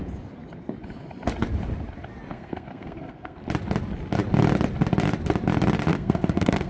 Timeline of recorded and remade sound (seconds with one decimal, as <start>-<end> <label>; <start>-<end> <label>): 0.0-2.3 recorded; 2.3-3.4 remade; 3.4-5.9 recorded; 5.9-6.7 remade